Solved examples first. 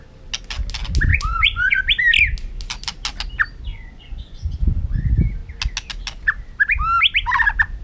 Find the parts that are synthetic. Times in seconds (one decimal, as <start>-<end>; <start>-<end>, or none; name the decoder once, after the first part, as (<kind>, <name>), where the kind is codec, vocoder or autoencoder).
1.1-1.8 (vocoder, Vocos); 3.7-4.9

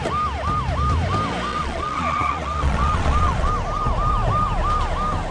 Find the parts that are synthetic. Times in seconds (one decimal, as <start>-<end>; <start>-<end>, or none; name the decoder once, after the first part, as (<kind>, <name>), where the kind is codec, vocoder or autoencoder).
1.5-3.5 (vocoder, Vocos)

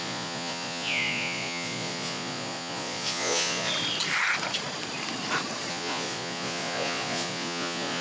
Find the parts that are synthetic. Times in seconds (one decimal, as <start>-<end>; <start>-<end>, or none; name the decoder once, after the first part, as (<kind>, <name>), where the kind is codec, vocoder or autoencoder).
0.0-3.7 (vocoder, Vocos); 5.7-8.0

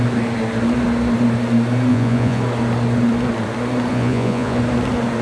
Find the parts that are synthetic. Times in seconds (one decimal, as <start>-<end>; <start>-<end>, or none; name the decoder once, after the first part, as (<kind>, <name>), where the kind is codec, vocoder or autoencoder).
1.9-2.4 (vocoder, Vocos); 3.9-4.6

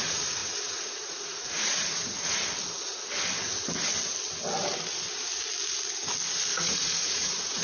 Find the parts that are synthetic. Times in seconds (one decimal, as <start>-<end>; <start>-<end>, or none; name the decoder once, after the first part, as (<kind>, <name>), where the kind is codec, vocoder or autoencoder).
0.0-2.4 (vocoder, Vocos); 6.5-7.6